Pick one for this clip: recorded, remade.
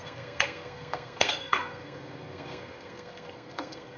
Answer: remade